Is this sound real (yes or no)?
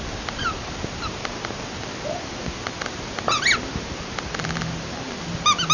yes